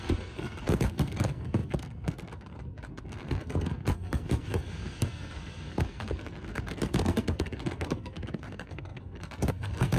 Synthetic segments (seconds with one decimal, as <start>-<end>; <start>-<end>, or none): 0.0-10.0